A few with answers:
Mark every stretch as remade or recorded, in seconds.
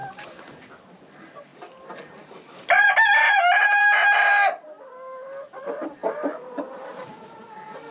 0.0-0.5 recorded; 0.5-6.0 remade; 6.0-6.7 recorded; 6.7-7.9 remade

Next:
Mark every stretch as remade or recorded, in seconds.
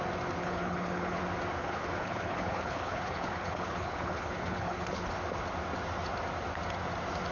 0.0-0.4 recorded; 0.4-1.2 remade; 1.2-1.6 recorded; 1.6-5.1 remade; 5.1-7.3 recorded